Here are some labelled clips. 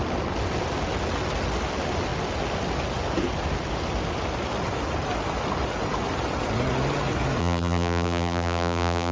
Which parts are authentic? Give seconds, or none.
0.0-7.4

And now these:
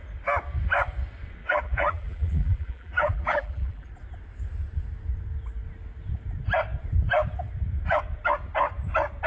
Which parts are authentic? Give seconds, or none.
0.0-1.4; 3.9-9.3

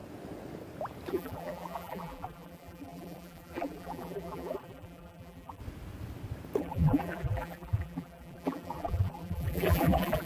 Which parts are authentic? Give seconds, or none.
0.0-1.1; 5.6-6.6

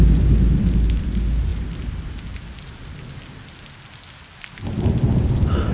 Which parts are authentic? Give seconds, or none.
0.0-5.7